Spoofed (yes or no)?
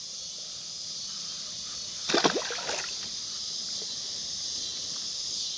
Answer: no